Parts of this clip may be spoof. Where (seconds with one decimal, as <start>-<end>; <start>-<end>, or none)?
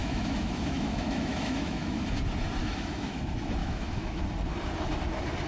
0.0-2.2; 2.6-3.2; 3.6-4.2